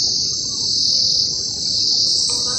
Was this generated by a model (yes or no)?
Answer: no